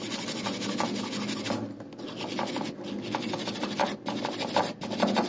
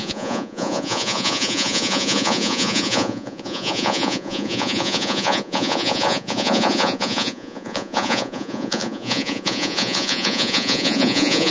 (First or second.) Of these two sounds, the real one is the first